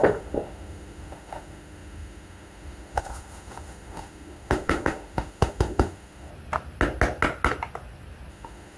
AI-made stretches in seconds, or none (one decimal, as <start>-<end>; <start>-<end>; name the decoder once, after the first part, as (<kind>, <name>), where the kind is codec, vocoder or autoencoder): 0.0-6.3 (autoencoder, DAC-VAE); 8.3-8.8